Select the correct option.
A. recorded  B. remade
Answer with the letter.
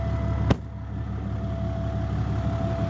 A